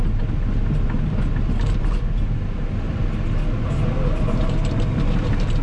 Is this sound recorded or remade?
recorded